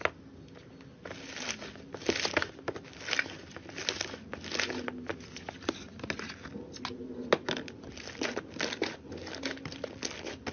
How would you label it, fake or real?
real